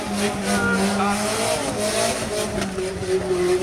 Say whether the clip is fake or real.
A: real